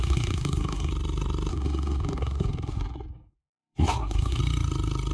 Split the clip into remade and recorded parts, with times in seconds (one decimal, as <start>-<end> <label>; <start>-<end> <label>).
0.0-0.9 remade; 0.9-1.5 recorded; 1.5-4.4 remade; 4.4-5.1 recorded